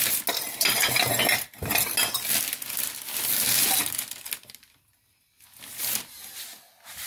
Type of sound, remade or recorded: recorded